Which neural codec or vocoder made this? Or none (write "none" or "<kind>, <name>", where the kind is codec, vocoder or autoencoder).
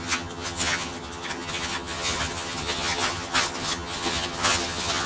vocoder, HiFi-GAN